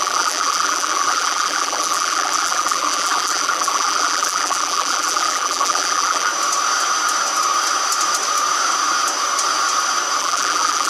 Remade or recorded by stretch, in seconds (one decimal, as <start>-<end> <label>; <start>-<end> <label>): 0.0-6.3 remade; 6.3-10.2 recorded; 10.2-10.9 remade